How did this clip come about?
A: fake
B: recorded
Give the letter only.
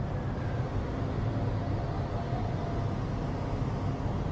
B